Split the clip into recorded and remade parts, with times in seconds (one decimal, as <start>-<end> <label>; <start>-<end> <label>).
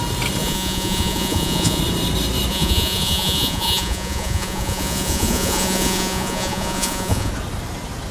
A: 0.0-0.4 recorded; 0.4-1.8 remade; 1.8-2.5 recorded; 2.5-7.3 remade; 7.3-8.1 recorded